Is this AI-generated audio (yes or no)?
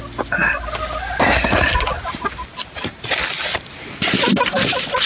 no